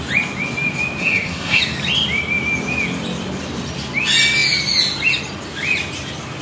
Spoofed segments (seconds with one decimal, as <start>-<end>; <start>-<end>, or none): 1.0-1.6